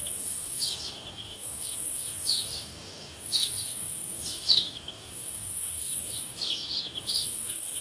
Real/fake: fake